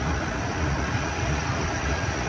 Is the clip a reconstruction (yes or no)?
yes